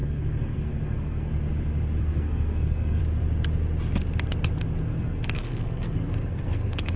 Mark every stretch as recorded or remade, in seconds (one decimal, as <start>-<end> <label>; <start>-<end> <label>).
0.0-1.3 remade; 1.3-2.0 recorded; 2.0-3.0 remade; 3.0-4.9 recorded; 4.9-7.0 remade